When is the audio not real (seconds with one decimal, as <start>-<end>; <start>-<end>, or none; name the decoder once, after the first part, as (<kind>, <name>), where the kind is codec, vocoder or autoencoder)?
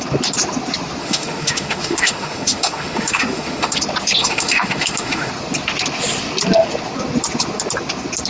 1.0-3.8 (autoencoder, DAC-VAE); 4.2-5.3